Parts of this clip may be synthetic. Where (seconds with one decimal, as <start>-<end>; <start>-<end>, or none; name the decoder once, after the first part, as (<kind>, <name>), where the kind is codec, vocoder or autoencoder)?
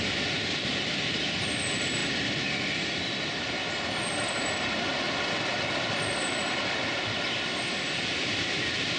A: none